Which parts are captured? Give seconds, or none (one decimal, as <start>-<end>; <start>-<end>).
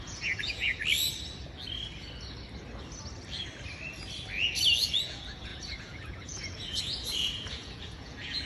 0.8-4.9